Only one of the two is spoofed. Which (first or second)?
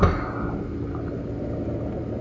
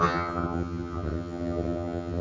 second